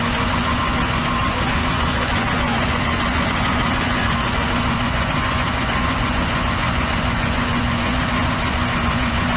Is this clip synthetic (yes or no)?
yes